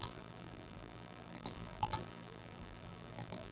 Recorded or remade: remade